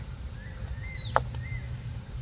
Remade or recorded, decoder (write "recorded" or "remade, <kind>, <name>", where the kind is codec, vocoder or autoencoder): recorded